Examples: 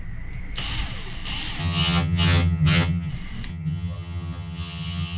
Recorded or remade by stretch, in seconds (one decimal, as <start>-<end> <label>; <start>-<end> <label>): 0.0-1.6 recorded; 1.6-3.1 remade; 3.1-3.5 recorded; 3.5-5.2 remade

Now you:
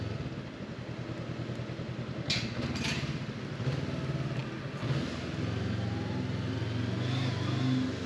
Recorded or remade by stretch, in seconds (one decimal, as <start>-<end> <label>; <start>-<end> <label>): 0.0-8.1 recorded

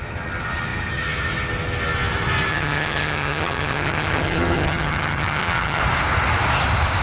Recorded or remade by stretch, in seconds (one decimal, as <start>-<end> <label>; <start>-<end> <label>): 0.0-2.5 recorded; 2.5-5.8 remade; 5.8-7.0 recorded

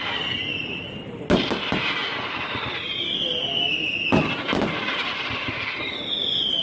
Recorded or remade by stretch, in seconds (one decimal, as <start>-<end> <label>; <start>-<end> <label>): 0.0-6.6 recorded